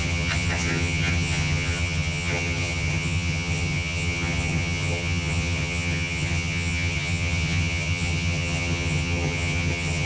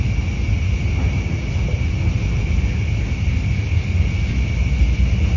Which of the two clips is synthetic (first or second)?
first